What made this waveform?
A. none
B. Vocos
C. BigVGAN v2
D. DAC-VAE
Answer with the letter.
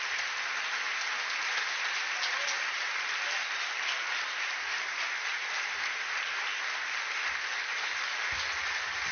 A